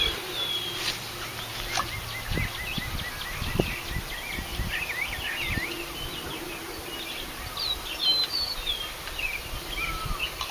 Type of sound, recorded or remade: recorded